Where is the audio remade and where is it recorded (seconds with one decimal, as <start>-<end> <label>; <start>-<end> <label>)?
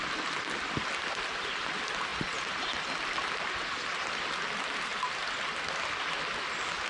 0.0-6.9 recorded